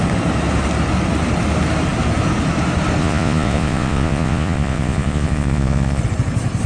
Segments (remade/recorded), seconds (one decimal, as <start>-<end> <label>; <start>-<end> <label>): 0.0-3.0 recorded; 3.0-6.0 remade; 6.0-6.7 recorded